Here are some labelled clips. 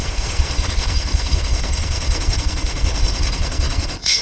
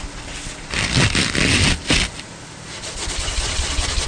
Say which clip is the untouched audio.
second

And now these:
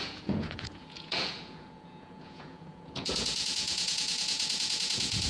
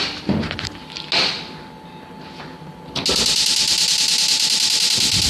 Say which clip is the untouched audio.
second